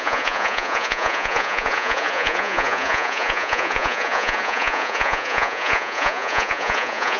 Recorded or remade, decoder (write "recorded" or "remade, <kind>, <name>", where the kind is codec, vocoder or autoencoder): remade, vocoder, Vocos